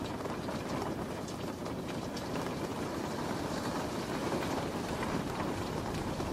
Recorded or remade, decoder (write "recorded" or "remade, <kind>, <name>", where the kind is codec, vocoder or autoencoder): remade, vocoder, BigVGAN v2